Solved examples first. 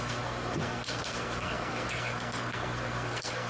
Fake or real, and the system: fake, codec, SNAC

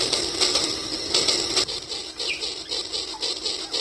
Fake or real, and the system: real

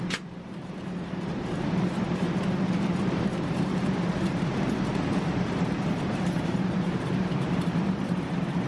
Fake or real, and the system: fake, vocoder, BigVGAN v2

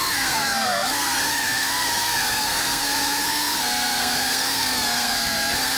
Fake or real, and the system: fake, codec, SNAC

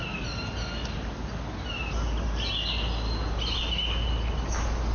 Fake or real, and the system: real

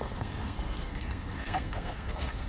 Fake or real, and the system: fake, codec, SNAC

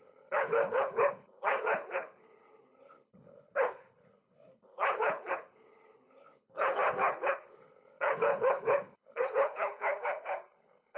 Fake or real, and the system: fake, codec, HILCodec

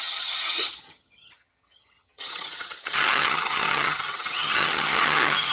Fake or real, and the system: fake, vocoder, HiFi-GAN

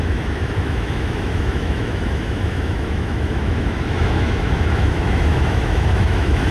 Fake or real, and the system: fake, autoencoder, DAC-VAE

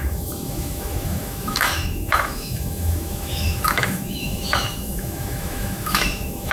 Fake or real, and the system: fake, autoencoder, DAC-VAE